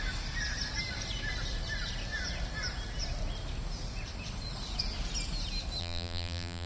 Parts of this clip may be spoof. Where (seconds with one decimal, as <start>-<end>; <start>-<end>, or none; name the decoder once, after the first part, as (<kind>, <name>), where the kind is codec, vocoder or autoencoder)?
5.8-6.7 (vocoder, BigVGAN v2)